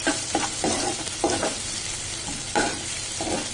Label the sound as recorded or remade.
remade